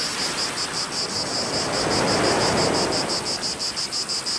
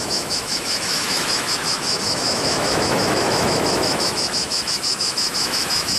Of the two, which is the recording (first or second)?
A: first